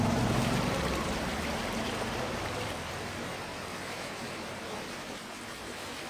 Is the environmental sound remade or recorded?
remade